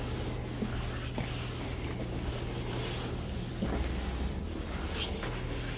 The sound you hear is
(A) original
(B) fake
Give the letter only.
A